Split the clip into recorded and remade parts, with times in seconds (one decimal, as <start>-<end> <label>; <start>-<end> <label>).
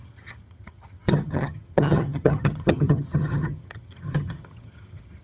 0.0-5.2 remade